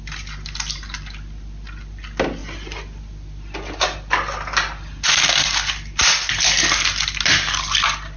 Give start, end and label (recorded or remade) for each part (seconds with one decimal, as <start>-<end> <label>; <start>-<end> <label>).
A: 0.0-8.2 recorded

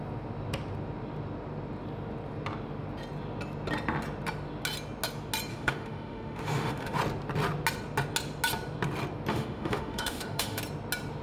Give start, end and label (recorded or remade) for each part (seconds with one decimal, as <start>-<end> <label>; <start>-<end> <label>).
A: 0.0-5.5 recorded; 5.5-7.0 remade; 7.0-9.3 recorded; 9.3-10.6 remade; 10.6-11.2 recorded